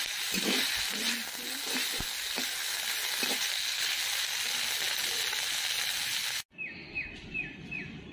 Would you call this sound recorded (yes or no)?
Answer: yes